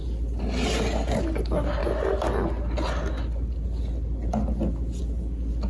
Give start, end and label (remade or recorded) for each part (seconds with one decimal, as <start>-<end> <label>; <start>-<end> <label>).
0.0-5.7 recorded

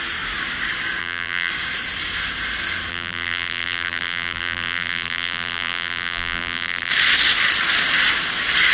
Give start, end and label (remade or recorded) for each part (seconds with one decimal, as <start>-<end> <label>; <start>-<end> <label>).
0.0-1.0 recorded; 1.0-1.5 remade; 1.5-2.9 recorded; 2.9-6.9 remade; 6.9-8.7 recorded